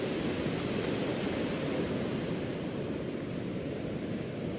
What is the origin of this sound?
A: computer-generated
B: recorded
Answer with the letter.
B